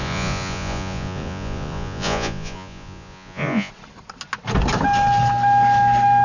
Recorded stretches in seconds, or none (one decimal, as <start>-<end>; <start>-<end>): 3.7-6.2